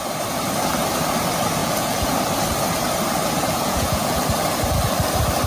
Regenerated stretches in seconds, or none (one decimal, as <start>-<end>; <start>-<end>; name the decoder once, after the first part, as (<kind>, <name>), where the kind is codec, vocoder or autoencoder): 1.6-2.1 (vocoder, Vocos); 3.4-4.2